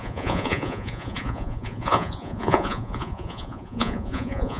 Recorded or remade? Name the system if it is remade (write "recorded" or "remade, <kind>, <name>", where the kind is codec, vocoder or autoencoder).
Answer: remade, vocoder, Vocos